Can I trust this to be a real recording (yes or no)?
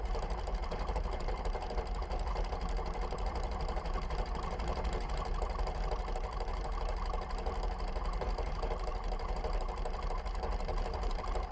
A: no